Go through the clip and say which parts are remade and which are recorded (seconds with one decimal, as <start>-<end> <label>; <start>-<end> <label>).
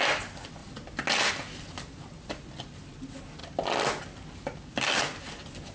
0.0-5.7 recorded